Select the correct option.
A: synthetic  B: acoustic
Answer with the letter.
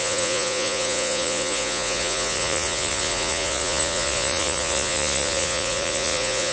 A